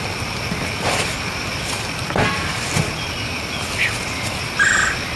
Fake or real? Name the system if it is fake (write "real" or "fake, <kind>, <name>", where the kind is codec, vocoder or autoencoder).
real